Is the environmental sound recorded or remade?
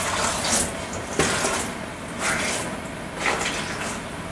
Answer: recorded